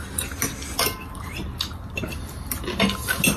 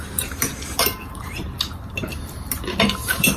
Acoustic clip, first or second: first